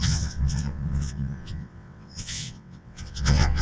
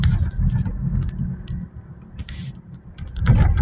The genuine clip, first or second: second